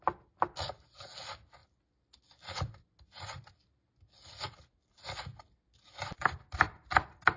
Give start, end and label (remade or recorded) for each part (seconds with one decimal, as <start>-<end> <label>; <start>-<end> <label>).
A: 0.0-7.4 recorded